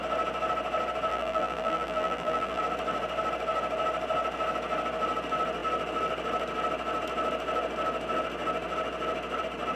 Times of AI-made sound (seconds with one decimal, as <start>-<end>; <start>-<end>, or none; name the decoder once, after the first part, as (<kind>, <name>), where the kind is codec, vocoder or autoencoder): 1.1-2.6 (vocoder, BigVGAN v2)